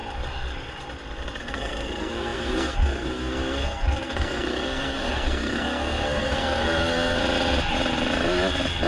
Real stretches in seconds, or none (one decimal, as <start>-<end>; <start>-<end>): 0.0-1.4; 7.2-8.9